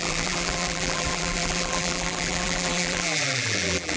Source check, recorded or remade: remade